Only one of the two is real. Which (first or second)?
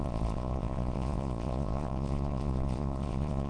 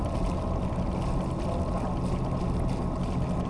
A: second